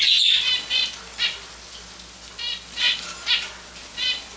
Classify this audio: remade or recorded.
recorded